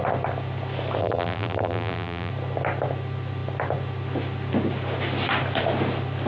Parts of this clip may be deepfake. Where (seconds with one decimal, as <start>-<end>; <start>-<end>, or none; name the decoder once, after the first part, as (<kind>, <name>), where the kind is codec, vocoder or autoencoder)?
1.0-2.3 (vocoder, BigVGAN v2)